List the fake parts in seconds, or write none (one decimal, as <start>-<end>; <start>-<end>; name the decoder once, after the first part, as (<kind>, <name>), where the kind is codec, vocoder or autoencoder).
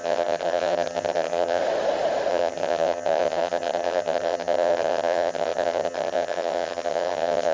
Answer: 0.0-1.6 (vocoder, HiFi-GAN); 2.3-7.5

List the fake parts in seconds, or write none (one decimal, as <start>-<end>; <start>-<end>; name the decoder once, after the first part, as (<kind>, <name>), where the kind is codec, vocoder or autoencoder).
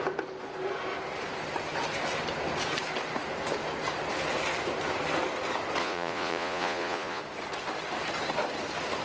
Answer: 5.8-7.2 (vocoder, Vocos)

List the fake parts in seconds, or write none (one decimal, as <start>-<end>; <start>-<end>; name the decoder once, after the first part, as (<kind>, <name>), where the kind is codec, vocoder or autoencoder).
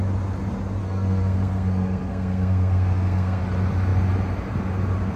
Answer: 0.8-3.4 (codec, SNAC)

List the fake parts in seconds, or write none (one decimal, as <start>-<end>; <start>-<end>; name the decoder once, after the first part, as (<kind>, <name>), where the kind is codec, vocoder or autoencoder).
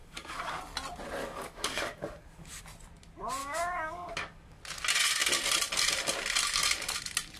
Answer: 0.0-0.6 (codec, DAC); 1.2-2.6; 3.4-4.6